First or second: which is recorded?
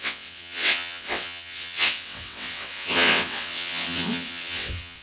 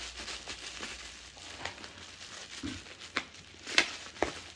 second